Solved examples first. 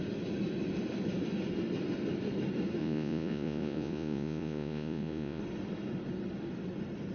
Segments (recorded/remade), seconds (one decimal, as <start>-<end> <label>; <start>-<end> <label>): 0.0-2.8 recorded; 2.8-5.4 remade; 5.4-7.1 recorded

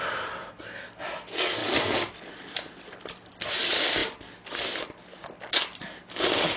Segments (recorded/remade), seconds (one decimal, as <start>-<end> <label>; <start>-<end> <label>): 0.0-6.6 recorded

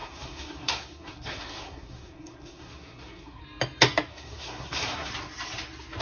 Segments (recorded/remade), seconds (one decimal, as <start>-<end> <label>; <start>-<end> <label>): 0.0-3.4 remade; 3.4-4.1 recorded; 4.1-5.1 remade; 5.1-6.0 recorded

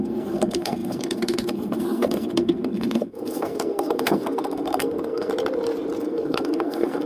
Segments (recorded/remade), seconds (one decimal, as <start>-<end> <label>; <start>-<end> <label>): 0.0-5.3 remade; 5.3-6.0 recorded; 6.0-7.1 remade